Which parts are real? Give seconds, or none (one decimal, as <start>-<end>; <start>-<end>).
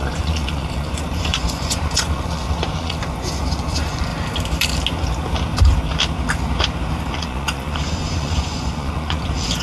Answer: 4.1-7.1